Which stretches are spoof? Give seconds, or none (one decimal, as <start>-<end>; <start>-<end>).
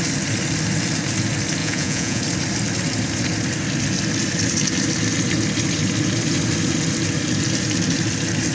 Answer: 1.6-2.2